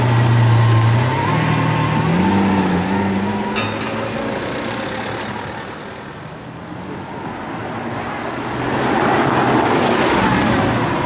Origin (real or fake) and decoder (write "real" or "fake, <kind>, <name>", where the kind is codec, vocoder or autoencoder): real